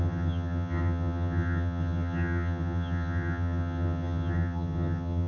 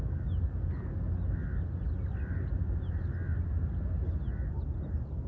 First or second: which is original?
second